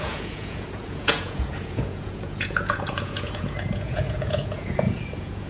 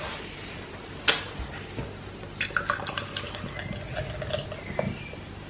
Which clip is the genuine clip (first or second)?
second